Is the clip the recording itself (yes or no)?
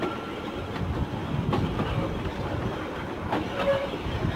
yes